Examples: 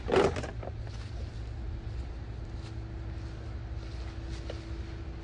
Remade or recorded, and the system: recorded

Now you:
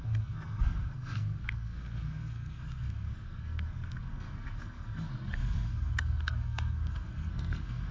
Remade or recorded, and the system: remade, codec, SNAC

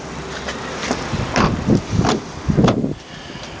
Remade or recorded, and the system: recorded